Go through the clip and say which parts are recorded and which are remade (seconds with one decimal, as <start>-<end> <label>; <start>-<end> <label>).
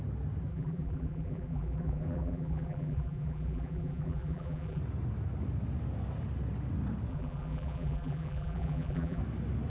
0.0-0.5 recorded; 0.5-4.8 remade; 4.8-7.1 recorded; 7.1-9.2 remade; 9.2-9.7 recorded